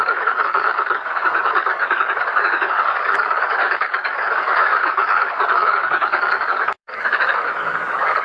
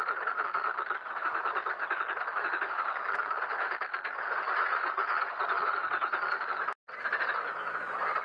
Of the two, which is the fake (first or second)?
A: first